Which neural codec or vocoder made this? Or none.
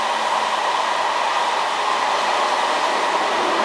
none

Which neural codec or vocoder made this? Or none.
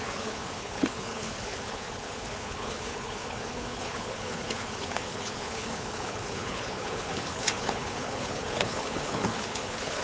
codec, HILCodec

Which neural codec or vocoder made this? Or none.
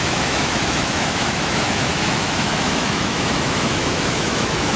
autoencoder, DAC-VAE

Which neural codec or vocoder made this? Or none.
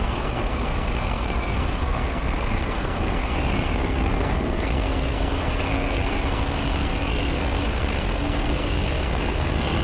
codec, SNAC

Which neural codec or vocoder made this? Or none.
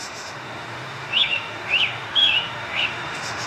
autoencoder, DAC-VAE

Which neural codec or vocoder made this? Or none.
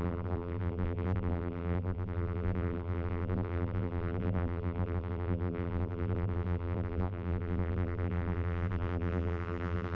vocoder, BigVGAN v2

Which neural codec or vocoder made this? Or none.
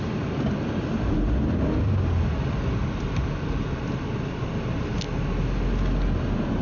none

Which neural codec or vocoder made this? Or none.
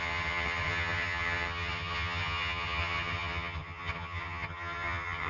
vocoder, HiFi-GAN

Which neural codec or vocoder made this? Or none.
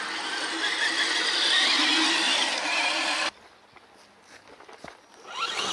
none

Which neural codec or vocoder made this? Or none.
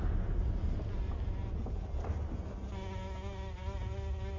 none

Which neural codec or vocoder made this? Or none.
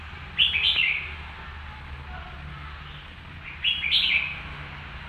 none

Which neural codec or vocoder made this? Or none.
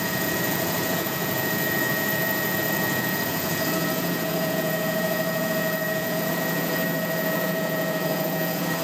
vocoder, Vocos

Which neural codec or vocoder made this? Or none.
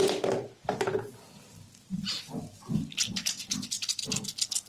none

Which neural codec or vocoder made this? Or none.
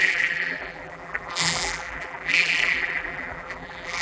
vocoder, BigVGAN v2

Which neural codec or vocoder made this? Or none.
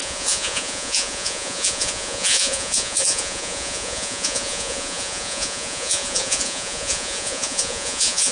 vocoder, Vocos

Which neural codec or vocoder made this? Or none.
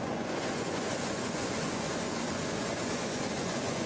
vocoder, Vocos